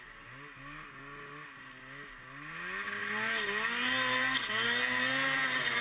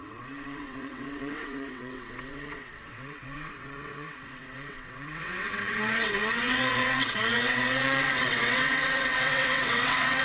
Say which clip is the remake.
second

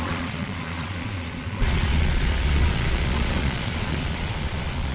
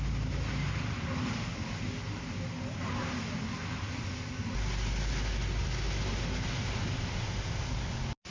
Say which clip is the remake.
first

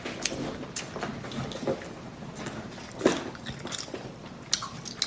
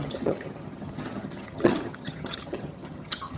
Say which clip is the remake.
second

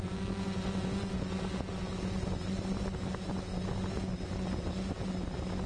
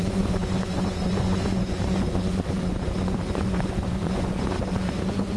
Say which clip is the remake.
second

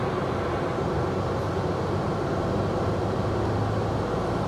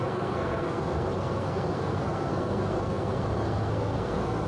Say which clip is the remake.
second